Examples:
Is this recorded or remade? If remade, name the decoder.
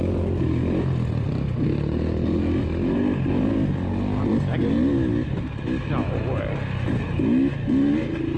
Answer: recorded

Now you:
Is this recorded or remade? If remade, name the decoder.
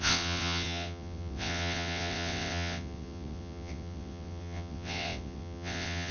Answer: remade, vocoder, WaveNeXt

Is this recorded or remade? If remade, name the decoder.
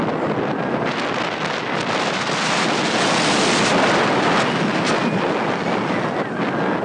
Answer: recorded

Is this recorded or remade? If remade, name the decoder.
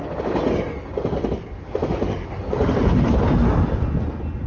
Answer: recorded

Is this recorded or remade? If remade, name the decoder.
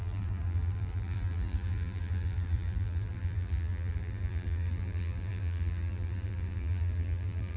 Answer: remade, vocoder, BigVGAN v2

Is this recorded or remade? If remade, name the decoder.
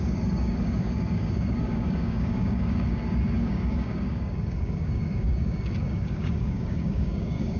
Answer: remade, codec, DAC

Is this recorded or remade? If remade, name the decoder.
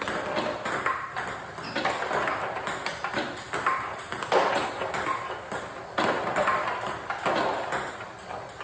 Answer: recorded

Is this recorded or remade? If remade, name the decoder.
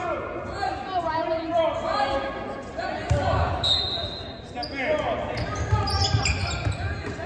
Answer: recorded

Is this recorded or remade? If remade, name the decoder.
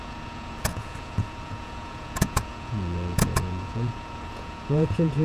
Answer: remade, vocoder, Vocos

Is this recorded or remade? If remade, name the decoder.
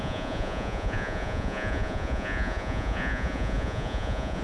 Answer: remade, vocoder, Vocos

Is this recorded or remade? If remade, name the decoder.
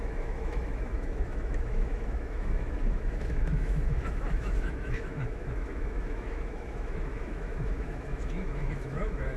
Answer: remade, autoencoder, DAC-VAE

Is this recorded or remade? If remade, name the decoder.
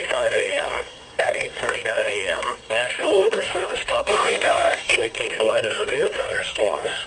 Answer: remade, codec, SNAC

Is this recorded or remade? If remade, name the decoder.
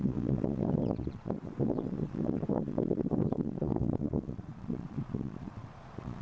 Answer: remade, vocoder, Vocos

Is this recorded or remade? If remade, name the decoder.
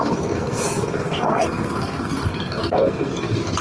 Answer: remade, codec, SNAC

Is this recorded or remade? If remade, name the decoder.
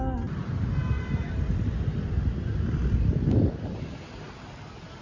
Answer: recorded